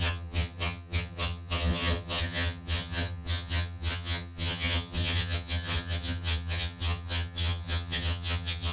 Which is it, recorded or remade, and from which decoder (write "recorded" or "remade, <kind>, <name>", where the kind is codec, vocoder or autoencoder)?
remade, vocoder, HiFi-GAN